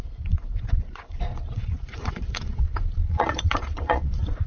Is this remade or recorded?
remade